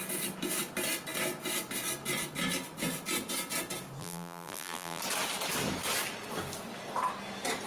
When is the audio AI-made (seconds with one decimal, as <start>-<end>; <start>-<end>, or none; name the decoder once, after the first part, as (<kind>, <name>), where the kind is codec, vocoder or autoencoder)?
4.0-5.0 (vocoder, BigVGAN v2)